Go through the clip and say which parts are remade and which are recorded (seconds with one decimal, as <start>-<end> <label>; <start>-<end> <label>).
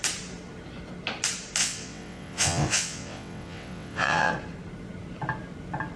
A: 0.0-1.6 recorded; 1.6-4.3 remade; 4.3-6.0 recorded